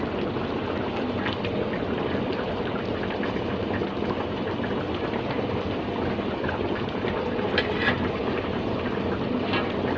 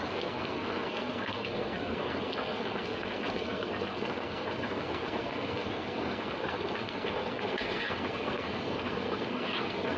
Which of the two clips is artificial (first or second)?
second